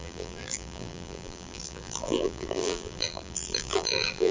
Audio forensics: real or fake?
fake